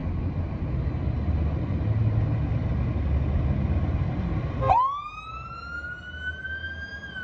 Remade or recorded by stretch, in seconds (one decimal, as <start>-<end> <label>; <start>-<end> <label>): 0.0-7.2 recorded